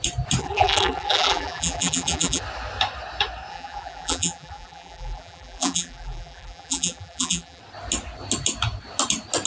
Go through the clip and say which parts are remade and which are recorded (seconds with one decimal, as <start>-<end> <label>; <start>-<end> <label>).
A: 0.0-0.4 recorded; 0.4-2.4 remade; 2.4-3.5 recorded; 3.5-7.6 remade; 7.6-9.5 recorded